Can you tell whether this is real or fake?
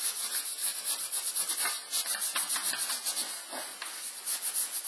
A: real